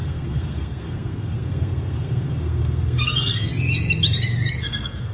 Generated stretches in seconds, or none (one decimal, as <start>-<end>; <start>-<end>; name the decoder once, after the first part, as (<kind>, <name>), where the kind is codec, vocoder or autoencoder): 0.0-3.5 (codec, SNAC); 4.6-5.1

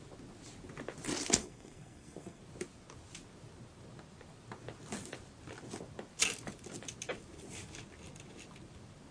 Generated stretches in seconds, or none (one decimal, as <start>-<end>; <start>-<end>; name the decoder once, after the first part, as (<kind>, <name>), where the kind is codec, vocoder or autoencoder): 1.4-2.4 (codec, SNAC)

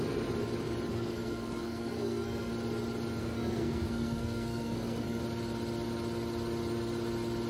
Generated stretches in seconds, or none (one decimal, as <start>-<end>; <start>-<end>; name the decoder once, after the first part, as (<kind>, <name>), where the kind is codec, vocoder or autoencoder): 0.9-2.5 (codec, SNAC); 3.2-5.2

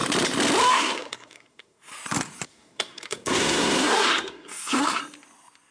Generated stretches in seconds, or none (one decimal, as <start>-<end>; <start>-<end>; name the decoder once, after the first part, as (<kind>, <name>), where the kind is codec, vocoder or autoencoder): 0.7-1.9 (codec, SNAC); 2.5-5.0

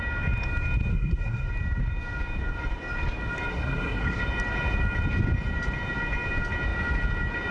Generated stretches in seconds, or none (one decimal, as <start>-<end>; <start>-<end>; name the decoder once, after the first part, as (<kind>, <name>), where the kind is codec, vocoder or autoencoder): 0.9-1.5 (codec, SNAC); 3.5-4.2

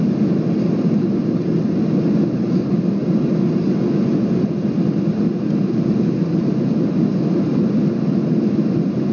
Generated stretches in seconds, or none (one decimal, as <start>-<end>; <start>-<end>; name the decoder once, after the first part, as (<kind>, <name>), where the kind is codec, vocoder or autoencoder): none